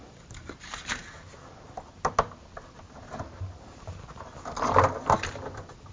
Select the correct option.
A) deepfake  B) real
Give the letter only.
B